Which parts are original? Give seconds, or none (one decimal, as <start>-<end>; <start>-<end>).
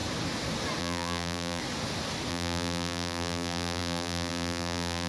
0.0-0.8; 1.6-2.3